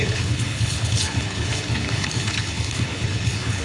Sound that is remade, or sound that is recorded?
remade